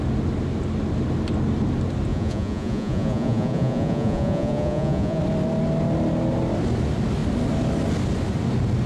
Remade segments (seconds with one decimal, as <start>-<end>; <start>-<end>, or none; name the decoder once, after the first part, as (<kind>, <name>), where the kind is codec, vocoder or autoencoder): 2.1-5.2 (vocoder, Vocos)